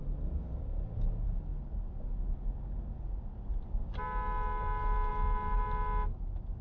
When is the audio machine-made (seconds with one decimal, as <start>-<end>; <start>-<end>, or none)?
none